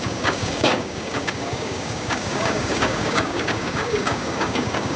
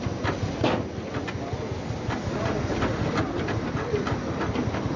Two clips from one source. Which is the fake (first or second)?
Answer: first